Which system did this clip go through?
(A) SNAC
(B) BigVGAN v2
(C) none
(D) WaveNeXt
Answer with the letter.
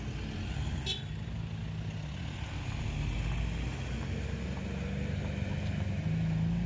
C